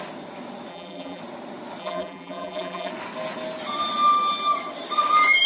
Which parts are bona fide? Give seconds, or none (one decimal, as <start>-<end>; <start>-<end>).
0.0-0.7; 1.2-1.8; 2.9-5.5